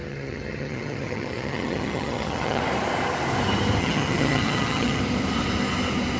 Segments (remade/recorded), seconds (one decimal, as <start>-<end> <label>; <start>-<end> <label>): 0.0-2.6 remade; 2.6-3.8 recorded; 3.8-5.0 remade; 5.0-6.2 recorded